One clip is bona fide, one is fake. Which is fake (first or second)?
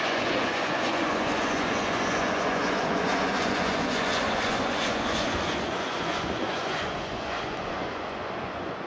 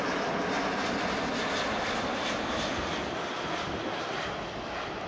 first